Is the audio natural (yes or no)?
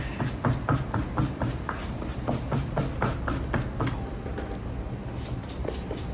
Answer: yes